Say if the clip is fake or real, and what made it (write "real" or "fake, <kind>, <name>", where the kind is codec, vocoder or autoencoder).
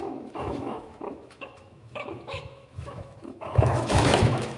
fake, autoencoder, DAC-VAE